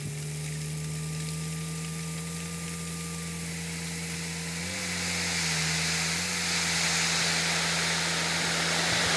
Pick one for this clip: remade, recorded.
recorded